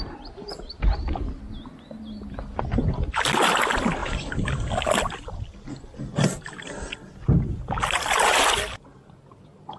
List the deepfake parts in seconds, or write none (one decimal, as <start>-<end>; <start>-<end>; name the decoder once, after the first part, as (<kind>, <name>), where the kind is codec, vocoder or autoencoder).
none